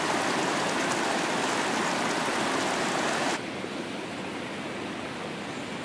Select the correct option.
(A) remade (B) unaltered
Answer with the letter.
B